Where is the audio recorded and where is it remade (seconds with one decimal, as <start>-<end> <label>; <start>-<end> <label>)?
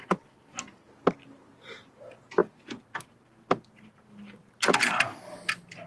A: 0.0-5.9 recorded